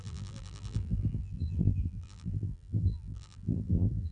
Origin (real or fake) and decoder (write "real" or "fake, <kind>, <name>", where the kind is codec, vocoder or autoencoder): fake, vocoder, BigVGAN v2